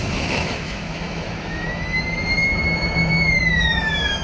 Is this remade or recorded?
remade